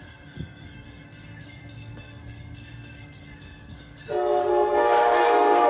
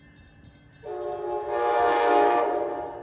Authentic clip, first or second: second